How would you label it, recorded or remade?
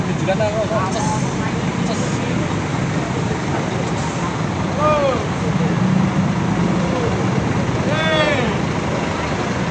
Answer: recorded